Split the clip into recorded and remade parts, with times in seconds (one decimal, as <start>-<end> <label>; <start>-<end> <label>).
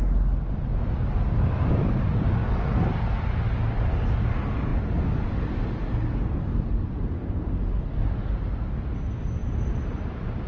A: 0.0-6.5 recorded; 6.5-7.5 remade; 7.5-10.5 recorded